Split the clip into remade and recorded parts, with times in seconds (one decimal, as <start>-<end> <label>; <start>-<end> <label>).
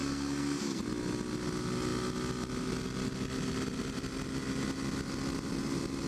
0.0-0.8 remade; 0.8-6.1 recorded